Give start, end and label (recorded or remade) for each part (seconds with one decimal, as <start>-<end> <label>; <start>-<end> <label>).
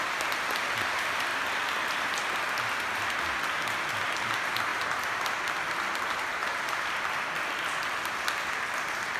0.0-9.2 recorded